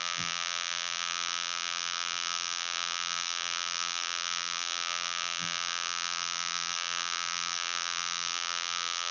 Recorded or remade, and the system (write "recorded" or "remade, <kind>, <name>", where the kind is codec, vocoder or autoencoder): remade, vocoder, BigVGAN v2